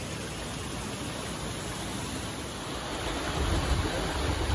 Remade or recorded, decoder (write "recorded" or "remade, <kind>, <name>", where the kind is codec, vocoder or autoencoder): recorded